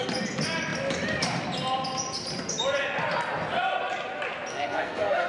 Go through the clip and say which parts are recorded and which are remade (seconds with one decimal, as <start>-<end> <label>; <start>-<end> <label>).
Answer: 0.0-4.5 recorded; 4.5-5.3 remade